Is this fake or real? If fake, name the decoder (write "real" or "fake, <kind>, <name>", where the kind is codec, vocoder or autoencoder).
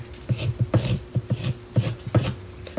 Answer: real